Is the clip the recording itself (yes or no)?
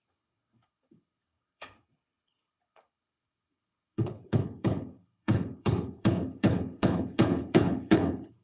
no